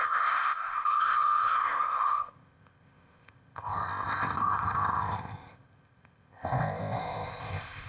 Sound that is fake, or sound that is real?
fake